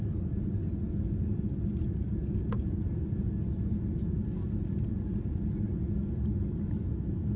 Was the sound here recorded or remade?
recorded